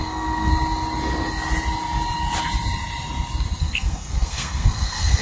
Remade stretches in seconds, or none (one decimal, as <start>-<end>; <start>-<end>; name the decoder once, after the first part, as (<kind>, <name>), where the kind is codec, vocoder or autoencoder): 0.0-0.5 (codec, SNAC); 3.6-5.2